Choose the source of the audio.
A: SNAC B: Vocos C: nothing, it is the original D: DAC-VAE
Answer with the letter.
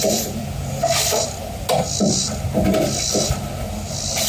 C